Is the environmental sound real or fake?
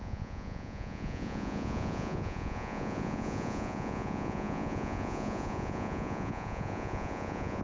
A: fake